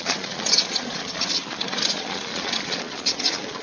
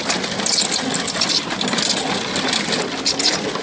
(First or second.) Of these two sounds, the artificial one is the first